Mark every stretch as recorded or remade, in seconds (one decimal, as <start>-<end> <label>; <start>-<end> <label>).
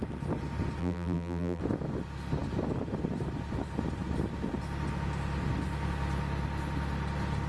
0.0-0.8 recorded; 0.8-1.6 remade; 1.6-7.5 recorded